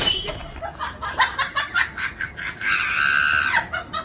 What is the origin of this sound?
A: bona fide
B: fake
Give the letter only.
A